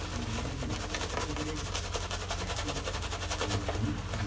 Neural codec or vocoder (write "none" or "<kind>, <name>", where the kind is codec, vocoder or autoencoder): none